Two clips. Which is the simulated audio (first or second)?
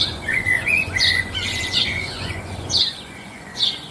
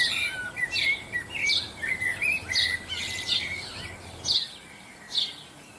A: first